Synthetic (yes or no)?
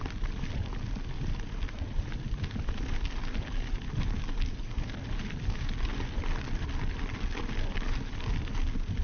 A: no